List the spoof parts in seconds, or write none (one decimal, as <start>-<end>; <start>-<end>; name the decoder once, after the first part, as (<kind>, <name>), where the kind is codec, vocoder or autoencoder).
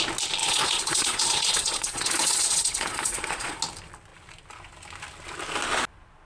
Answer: 0.4-3.6 (vocoder, Vocos)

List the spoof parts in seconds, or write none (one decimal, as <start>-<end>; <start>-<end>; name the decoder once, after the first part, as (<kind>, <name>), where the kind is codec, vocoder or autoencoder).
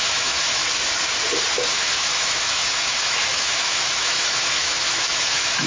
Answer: 0.0-0.6 (autoencoder, DAC-VAE); 1.7-5.7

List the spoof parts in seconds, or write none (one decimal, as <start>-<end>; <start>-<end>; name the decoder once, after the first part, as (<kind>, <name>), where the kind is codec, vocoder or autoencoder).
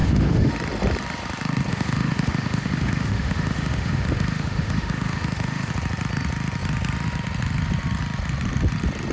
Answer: 0.0-0.5 (autoencoder, DAC-VAE); 1.7-5.7